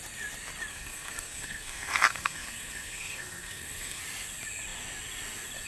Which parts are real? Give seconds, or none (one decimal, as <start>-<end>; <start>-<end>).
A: 0.0-0.7; 4.0-5.7